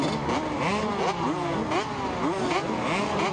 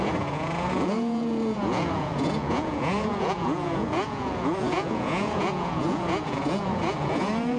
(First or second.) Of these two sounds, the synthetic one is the second